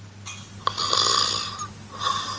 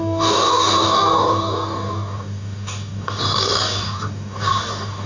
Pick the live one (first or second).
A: first